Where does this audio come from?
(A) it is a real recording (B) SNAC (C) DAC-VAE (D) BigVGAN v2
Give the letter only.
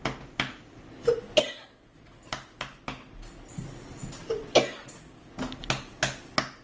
A